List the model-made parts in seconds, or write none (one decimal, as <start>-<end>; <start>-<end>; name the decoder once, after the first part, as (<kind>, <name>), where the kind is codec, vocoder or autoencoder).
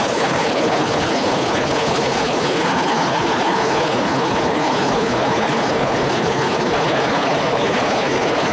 0.0-8.5 (codec, HILCodec)